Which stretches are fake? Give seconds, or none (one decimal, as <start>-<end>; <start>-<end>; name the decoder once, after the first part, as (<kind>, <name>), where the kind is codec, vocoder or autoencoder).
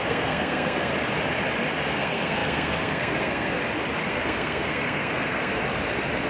0.0-0.9 (codec, SNAC); 1.9-3.6; 4.1-5.5